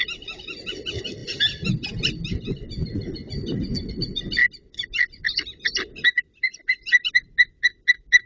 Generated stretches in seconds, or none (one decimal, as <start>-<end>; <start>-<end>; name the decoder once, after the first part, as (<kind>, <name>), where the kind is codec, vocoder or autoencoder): none